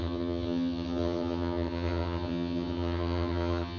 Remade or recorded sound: remade